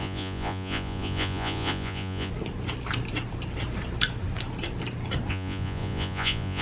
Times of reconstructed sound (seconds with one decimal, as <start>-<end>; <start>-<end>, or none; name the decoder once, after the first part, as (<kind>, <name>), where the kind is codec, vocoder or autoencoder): 0.0-2.3 (vocoder, Vocos); 5.3-6.6